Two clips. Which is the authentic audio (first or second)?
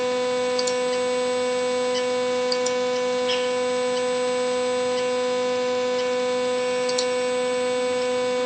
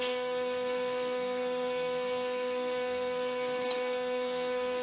first